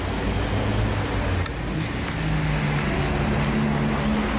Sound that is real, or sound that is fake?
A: real